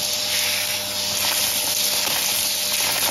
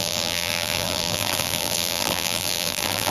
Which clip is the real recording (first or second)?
first